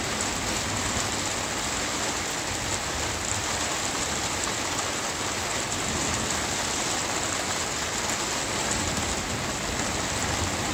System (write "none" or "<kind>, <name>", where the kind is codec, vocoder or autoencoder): none